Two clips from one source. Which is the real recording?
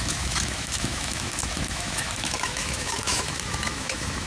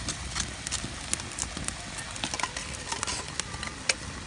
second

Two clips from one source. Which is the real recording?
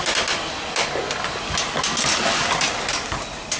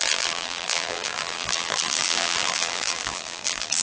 first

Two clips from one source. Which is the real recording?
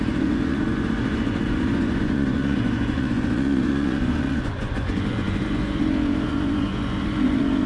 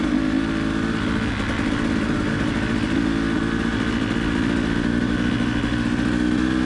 second